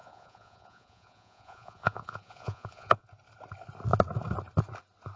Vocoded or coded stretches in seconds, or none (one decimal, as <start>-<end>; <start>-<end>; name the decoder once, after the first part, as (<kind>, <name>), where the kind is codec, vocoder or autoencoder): 0.0-3.1 (vocoder, Vocos)